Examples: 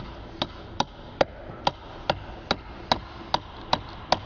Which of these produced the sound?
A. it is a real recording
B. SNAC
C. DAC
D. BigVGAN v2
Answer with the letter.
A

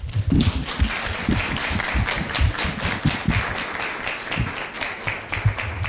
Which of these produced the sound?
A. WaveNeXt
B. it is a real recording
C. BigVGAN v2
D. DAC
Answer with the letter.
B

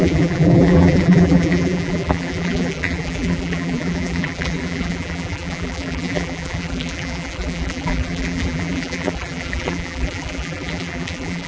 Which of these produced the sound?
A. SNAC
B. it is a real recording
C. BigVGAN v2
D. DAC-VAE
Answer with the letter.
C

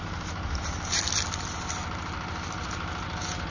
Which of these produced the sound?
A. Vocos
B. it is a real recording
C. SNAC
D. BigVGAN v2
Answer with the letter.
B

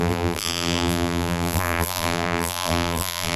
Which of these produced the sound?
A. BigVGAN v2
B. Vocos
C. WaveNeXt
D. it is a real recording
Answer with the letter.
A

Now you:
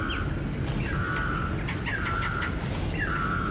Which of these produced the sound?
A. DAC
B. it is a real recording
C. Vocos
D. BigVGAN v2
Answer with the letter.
B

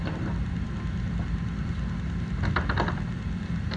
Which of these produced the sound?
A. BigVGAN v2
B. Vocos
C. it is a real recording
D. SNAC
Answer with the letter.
A